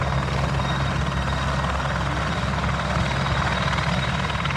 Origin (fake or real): real